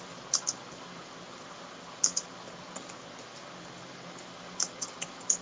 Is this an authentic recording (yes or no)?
yes